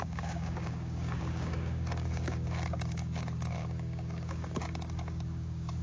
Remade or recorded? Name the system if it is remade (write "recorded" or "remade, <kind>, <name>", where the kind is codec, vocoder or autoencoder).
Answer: remade, codec, DAC